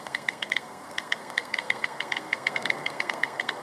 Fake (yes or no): yes